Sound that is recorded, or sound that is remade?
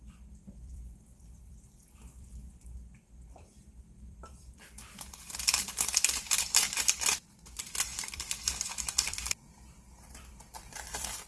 remade